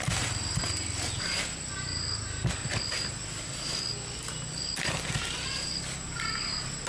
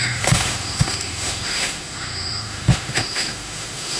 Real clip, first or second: first